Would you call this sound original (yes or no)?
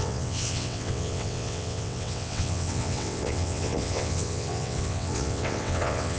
no